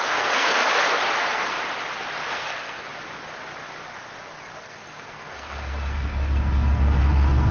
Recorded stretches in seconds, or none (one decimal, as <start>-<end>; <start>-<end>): 0.6-1.2; 1.6-2.3; 2.9-4.6